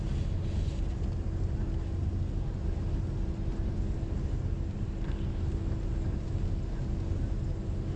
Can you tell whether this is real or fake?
real